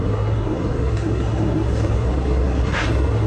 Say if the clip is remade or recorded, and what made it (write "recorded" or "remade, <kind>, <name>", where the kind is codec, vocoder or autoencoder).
remade, codec, SNAC